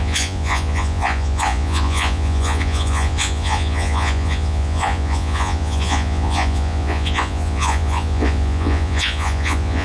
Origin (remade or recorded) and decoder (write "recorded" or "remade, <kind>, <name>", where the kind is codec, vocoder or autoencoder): remade, vocoder, Vocos